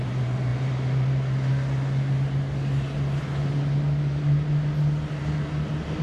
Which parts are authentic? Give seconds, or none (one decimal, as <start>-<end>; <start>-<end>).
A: 0.0-6.0